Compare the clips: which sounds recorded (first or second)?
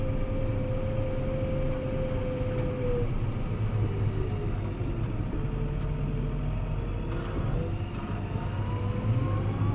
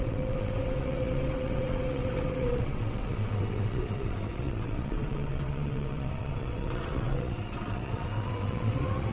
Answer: first